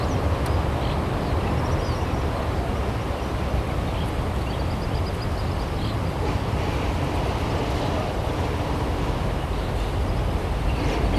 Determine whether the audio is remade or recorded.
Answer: recorded